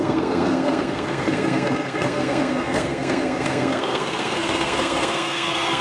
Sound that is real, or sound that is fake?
fake